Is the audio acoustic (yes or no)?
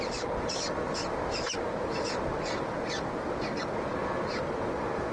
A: yes